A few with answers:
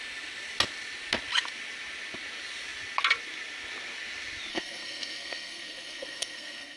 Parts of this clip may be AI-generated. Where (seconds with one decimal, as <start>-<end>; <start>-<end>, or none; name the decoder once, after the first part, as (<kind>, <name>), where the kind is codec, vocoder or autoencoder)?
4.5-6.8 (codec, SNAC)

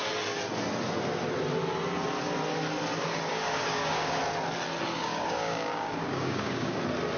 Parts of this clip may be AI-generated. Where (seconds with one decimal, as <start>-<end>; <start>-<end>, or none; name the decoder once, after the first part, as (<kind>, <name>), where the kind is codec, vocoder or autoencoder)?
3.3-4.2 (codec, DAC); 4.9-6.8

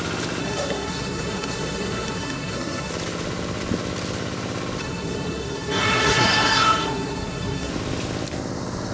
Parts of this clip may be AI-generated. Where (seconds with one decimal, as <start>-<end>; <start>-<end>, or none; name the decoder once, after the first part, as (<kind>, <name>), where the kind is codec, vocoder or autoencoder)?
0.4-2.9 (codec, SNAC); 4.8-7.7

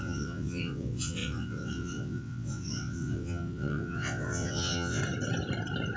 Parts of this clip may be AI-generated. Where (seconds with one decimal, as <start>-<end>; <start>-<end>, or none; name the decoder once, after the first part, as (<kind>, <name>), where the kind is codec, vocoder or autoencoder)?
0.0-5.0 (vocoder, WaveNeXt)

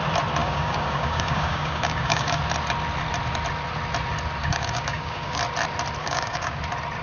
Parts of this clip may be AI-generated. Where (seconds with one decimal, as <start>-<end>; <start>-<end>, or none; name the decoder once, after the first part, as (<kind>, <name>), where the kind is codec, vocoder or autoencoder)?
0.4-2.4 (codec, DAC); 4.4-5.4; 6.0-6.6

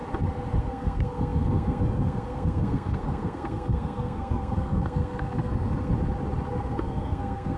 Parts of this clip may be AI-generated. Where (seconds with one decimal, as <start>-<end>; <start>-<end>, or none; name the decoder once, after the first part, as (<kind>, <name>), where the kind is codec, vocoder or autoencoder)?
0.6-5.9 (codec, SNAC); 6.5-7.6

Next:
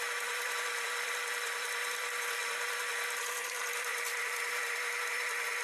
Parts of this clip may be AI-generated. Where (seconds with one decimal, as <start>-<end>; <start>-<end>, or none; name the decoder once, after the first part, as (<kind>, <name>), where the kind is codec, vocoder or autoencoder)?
0.0-5.6 (vocoder, BigVGAN v2)

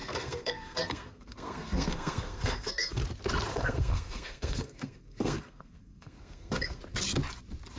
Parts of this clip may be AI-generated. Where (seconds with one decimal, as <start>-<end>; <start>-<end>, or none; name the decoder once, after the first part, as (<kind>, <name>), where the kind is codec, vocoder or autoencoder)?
0.0-3.0 (codec, SNAC); 3.5-6.8